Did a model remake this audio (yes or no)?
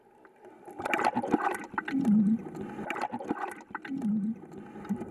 no